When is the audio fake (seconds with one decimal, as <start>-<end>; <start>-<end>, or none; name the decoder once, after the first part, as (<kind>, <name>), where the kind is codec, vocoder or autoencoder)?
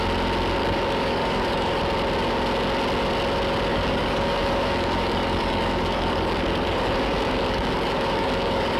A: 0.6-1.8 (codec, DAC); 3.7-8.8